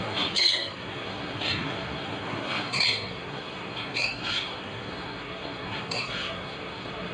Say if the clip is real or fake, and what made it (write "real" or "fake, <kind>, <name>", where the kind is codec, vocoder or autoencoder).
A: fake, codec, SNAC